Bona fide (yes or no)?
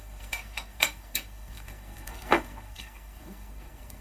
no